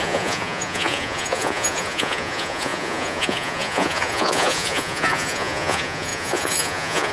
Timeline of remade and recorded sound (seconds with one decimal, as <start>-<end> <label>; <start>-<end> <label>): 0.0-7.1 remade